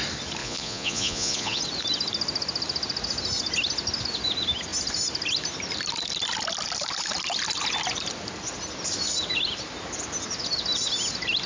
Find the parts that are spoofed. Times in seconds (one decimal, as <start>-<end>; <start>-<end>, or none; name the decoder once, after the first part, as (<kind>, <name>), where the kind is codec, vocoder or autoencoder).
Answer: 0.4-1.6 (vocoder, Vocos)